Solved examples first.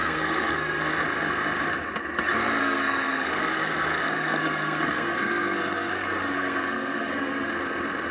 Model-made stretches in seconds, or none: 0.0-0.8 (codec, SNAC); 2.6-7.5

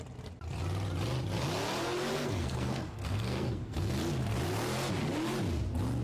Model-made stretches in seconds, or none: 2.1-3.9 (codec, SNAC)

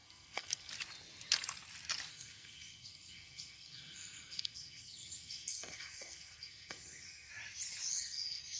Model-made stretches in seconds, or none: 0.0-0.7 (codec, SNAC); 2.1-7.3; 7.9-8.6

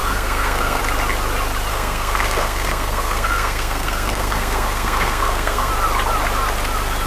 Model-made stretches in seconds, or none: 0.0-0.8 (codec, SNAC); 1.7-5.7